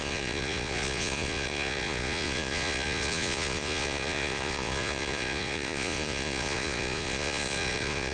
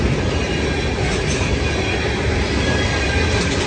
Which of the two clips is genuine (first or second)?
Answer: second